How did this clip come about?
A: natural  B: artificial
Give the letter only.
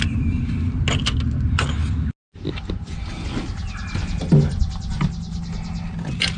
A